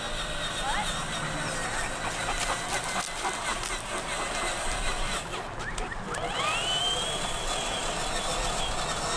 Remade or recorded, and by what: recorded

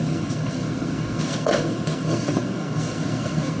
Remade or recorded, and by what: remade, codec, SNAC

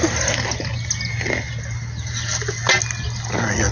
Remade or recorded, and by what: recorded